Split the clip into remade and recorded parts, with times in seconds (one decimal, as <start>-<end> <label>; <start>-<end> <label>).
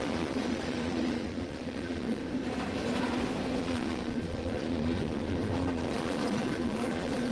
0.0-2.2 remade; 2.2-3.6 recorded; 3.6-7.3 remade